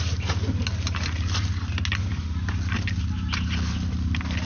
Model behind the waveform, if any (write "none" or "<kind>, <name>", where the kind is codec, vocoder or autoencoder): none